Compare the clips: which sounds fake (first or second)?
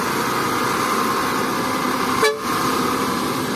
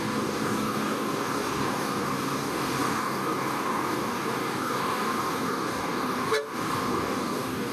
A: second